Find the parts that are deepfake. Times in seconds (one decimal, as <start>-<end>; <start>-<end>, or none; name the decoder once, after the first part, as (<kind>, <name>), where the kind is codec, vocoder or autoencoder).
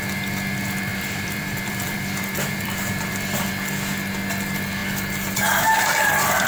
0.9-3.5 (vocoder, BigVGAN v2)